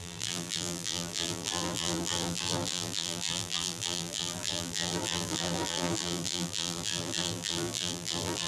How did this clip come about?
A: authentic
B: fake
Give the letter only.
B